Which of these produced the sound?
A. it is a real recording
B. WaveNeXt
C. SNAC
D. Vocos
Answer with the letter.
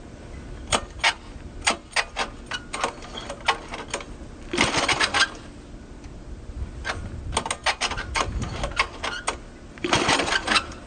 A